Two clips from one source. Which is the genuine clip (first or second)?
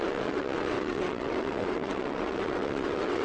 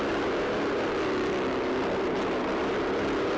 second